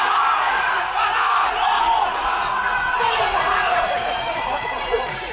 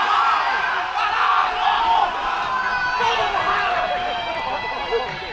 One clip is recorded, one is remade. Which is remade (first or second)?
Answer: first